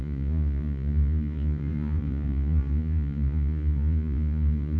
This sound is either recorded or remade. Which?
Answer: remade